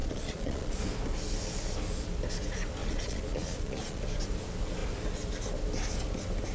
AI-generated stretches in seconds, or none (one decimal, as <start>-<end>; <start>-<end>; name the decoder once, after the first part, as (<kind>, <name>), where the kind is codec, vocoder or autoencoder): 0.0-0.8 (vocoder, Vocos); 2.8-4.0